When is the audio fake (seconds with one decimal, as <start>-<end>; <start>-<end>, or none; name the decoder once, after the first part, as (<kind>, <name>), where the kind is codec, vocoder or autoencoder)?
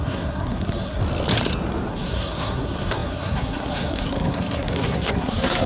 0.0-1.0 (codec, SNAC); 1.9-5.7